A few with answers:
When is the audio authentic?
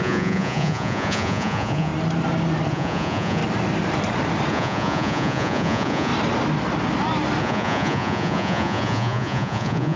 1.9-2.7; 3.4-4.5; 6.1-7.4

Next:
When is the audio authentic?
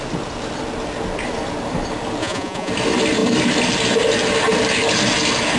0.0-2.2; 2.7-5.6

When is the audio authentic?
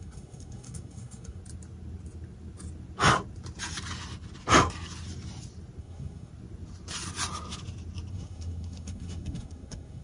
1.4-5.8; 6.3-8.1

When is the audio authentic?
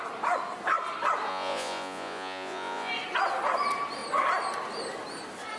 0.0-1.3; 2.9-5.6